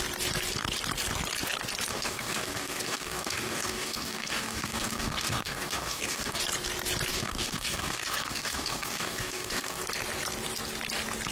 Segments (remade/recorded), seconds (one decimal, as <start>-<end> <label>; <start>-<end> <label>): 0.0-1.9 recorded; 1.9-6.4 remade; 6.4-7.1 recorded; 7.1-9.8 remade; 9.8-11.3 recorded

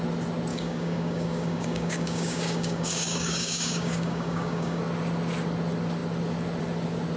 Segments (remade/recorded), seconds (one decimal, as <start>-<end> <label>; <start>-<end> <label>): 0.0-0.5 recorded; 0.5-4.8 remade; 4.8-7.2 recorded

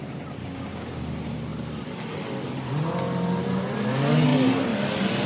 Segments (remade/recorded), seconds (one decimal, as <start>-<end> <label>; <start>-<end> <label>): 0.0-0.4 recorded; 0.4-1.0 remade; 1.0-5.3 recorded

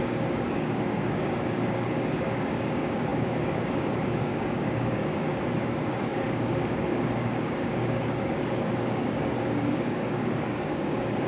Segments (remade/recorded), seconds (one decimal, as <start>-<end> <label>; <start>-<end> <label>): 0.0-11.3 remade

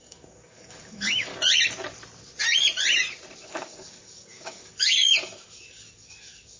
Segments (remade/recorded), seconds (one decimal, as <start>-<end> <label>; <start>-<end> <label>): 0.0-1.3 remade; 1.3-3.5 recorded; 3.5-6.6 remade

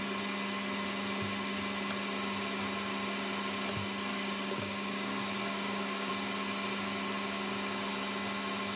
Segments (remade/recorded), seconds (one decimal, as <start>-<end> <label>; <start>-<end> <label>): 0.0-4.1 recorded; 4.1-6.1 remade; 6.1-8.8 recorded

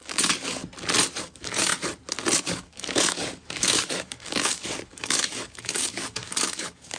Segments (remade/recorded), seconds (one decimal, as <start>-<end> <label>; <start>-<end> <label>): 0.0-0.6 remade; 0.6-1.2 recorded; 1.2-1.7 remade; 1.7-2.4 recorded; 2.4-7.0 remade

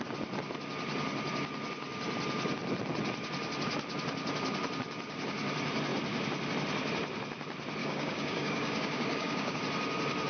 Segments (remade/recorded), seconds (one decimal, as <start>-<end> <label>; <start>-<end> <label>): 0.0-7.8 recorded; 7.8-9.6 remade; 9.6-10.3 recorded